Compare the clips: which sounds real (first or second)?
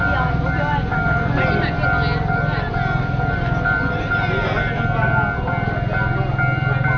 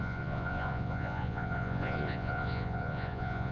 first